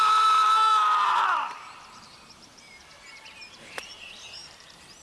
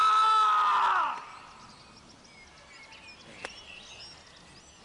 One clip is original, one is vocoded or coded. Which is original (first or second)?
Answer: second